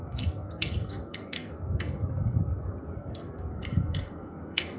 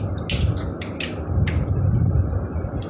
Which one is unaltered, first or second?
second